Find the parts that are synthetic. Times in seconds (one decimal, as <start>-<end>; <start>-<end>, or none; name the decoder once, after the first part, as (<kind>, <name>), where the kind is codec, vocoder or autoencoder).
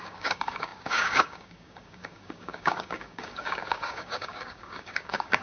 0.0-5.4 (codec, DAC)